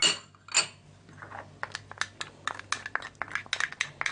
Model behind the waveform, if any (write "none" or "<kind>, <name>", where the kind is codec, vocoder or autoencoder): none